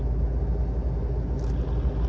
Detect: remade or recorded recorded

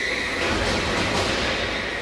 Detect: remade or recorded recorded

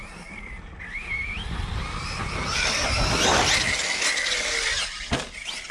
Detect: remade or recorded recorded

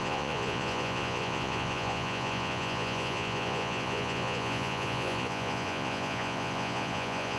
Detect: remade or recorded remade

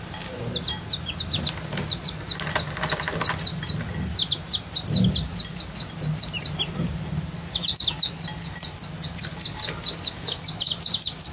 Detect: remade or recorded recorded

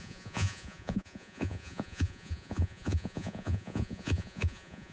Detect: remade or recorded remade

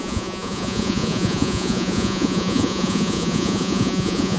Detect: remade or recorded remade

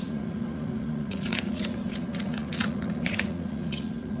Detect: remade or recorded remade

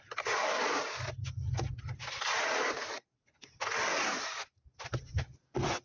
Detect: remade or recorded recorded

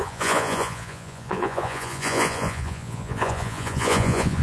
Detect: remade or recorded remade